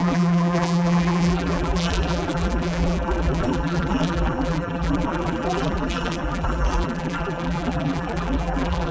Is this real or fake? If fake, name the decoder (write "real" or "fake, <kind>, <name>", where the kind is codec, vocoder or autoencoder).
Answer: fake, vocoder, BigVGAN v2